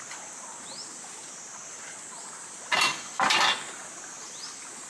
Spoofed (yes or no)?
no